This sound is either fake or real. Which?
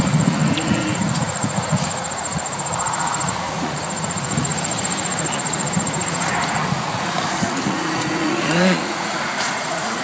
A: fake